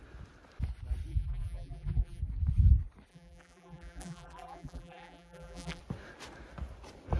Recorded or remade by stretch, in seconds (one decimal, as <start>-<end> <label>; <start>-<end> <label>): 0.0-1.1 recorded; 1.1-2.2 remade; 2.2-3.1 recorded; 3.1-5.8 remade; 5.8-7.2 recorded